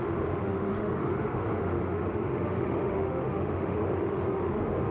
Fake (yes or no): yes